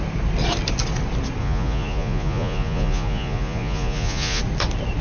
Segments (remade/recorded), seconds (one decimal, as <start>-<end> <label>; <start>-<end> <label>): 0.0-1.4 recorded; 1.4-4.4 remade; 4.4-5.0 recorded